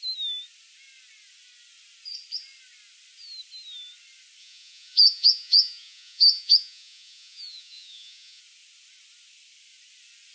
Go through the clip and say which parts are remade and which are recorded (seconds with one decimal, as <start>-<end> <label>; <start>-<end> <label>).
0.0-4.4 recorded; 4.4-8.4 remade; 8.4-10.3 recorded